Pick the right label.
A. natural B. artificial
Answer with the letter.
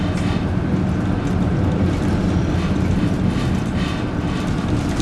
A